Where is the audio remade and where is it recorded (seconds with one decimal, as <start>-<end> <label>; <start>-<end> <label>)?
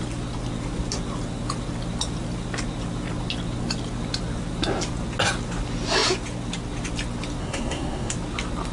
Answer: 0.0-7.4 recorded; 7.4-8.1 remade; 8.1-8.7 recorded